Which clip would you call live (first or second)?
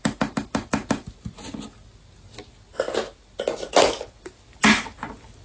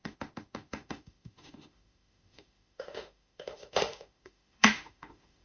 first